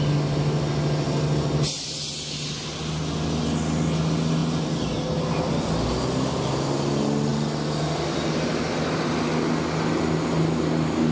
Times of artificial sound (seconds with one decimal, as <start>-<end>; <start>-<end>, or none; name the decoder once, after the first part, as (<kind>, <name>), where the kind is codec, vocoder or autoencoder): none